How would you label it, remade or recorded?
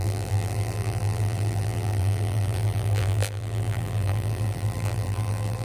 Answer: remade